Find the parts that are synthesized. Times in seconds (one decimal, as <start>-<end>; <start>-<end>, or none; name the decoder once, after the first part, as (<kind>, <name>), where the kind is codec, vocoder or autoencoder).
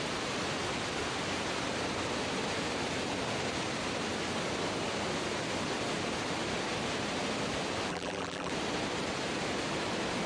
7.9-8.5 (vocoder, BigVGAN v2)